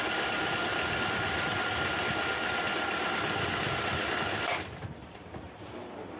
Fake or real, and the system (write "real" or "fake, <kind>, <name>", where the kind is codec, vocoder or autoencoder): real